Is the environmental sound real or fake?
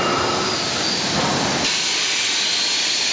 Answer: real